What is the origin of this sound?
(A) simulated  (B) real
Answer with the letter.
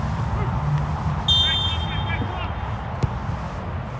B